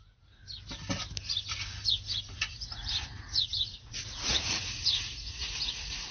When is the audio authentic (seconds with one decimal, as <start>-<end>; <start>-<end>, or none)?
0.4-2.5